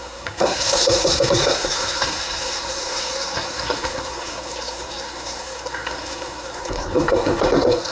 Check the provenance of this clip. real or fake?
fake